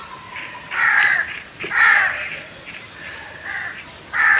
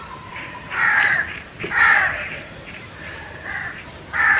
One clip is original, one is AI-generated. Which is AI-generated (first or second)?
second